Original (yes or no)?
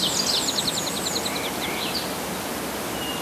yes